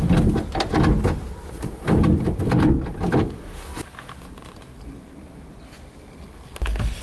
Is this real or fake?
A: real